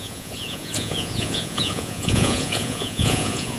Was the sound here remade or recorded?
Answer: remade